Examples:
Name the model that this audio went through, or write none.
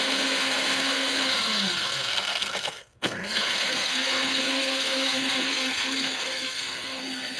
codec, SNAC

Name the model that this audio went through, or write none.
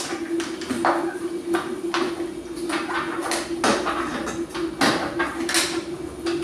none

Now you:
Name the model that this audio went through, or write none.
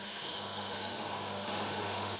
autoencoder, DAC-VAE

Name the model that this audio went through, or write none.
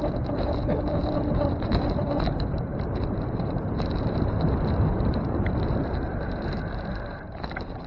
vocoder, BigVGAN v2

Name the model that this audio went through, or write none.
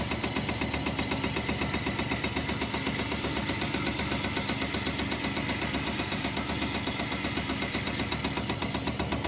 none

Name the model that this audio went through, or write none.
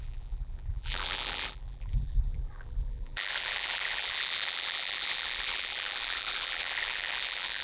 vocoder, BigVGAN v2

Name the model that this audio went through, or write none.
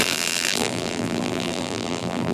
vocoder, BigVGAN v2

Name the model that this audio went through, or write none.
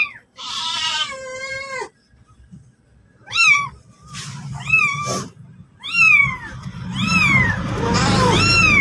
vocoder, BigVGAN v2